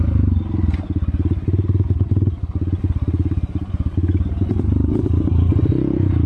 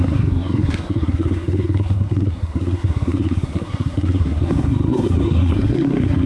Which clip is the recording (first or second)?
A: first